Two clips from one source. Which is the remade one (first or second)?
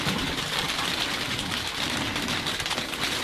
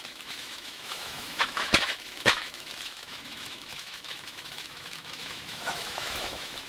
second